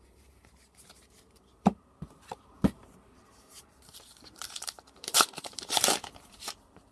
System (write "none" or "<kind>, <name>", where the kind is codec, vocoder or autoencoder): vocoder, BigVGAN v2